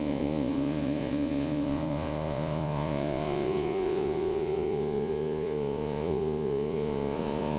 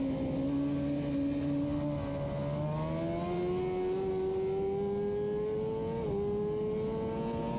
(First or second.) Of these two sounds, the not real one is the first